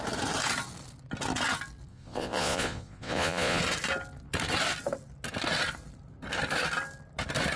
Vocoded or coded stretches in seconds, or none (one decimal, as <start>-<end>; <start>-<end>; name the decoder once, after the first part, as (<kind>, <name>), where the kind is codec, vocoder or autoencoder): 1.9-3.6 (vocoder, Vocos)

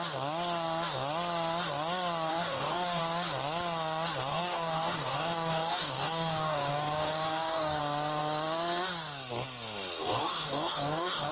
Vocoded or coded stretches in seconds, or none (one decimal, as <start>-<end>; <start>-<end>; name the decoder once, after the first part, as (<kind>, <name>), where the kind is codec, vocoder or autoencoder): 2.3-3.0 (codec, DAC); 4.3-7.8; 10.0-11.3